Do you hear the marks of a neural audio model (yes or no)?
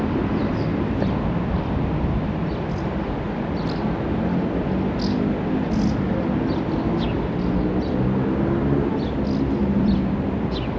no